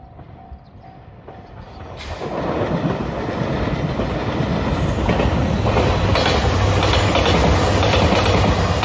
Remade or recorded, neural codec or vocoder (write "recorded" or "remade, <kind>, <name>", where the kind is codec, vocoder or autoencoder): recorded